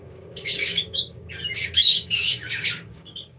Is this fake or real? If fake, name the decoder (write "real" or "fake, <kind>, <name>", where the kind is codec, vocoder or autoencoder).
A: fake, codec, DAC